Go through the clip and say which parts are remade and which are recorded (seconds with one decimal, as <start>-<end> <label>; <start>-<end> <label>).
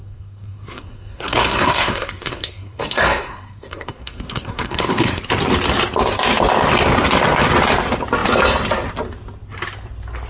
0.0-5.2 remade; 5.2-10.3 recorded